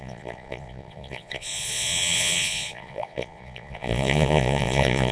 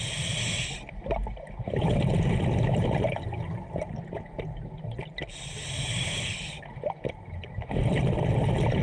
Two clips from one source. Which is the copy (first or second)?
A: first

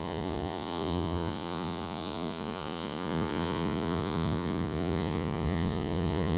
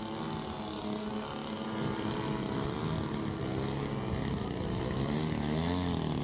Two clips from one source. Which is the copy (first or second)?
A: first